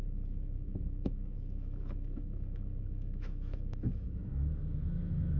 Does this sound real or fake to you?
fake